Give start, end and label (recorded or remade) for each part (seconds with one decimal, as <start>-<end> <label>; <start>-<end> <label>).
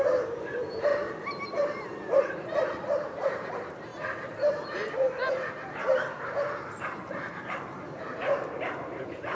0.0-0.9 remade; 0.9-2.2 recorded; 2.2-3.9 remade; 3.9-4.4 recorded; 4.4-9.3 remade